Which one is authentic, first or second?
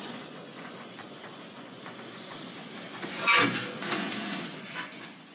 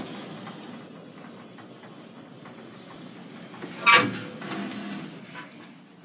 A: second